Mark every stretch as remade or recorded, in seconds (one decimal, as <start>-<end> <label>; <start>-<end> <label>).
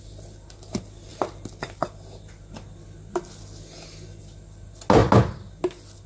0.0-6.1 recorded